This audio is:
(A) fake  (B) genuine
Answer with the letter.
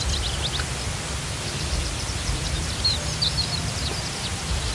B